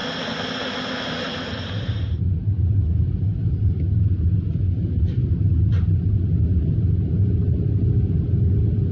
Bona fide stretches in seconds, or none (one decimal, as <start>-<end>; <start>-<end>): 0.0-1.1; 5.2-5.7